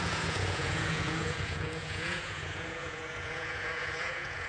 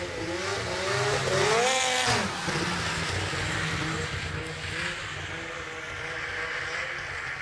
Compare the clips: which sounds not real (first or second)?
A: first